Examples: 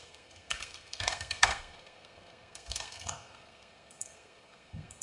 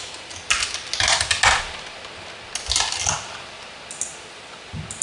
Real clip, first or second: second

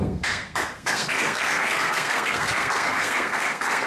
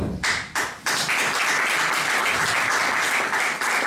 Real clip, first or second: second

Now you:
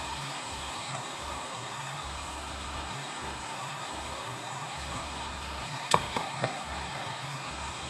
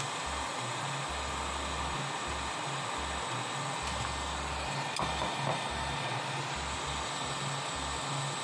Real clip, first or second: second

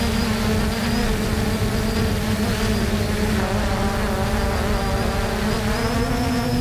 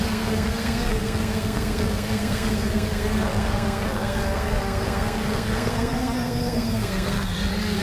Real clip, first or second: first